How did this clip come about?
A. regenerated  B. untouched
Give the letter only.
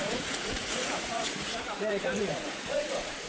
A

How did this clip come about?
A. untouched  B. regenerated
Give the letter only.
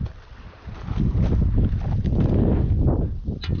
A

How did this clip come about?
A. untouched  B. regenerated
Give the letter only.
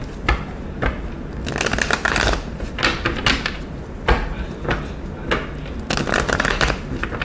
A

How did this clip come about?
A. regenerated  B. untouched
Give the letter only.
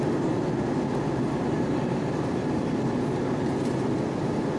B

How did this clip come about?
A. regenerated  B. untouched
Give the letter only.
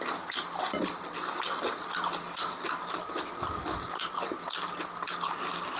B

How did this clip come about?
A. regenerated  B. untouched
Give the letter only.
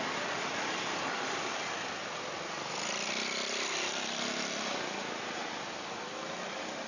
B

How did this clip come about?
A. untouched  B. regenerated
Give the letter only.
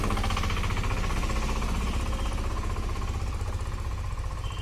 A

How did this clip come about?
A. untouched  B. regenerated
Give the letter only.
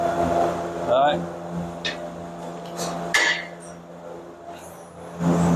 A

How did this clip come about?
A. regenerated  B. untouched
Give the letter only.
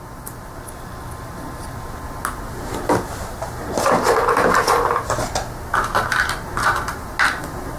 B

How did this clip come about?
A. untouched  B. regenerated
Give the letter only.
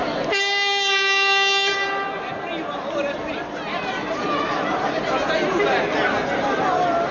A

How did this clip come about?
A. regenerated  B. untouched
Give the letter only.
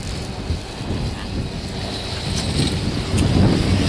B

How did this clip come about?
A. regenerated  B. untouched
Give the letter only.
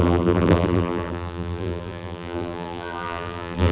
A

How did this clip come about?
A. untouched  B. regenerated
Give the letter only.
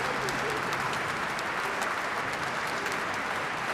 A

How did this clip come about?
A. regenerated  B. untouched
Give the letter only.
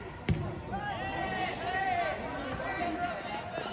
B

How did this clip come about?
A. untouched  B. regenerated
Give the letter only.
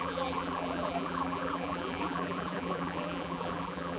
B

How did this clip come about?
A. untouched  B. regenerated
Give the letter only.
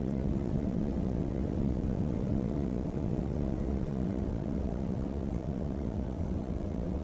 B